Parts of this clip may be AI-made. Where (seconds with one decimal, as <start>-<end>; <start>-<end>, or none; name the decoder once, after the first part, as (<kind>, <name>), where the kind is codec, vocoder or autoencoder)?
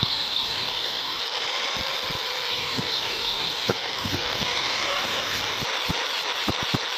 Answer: 0.0-1.2 (codec, DAC); 2.5-5.6